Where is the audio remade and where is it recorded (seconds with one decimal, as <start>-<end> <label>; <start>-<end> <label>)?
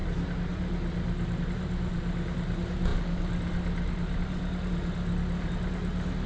0.0-6.3 recorded